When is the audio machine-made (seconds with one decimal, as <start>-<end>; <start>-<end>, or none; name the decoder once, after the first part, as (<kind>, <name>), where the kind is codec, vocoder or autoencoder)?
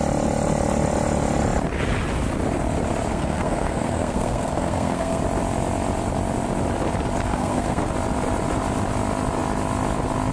3.1-5.2 (codec, SNAC); 7.3-7.9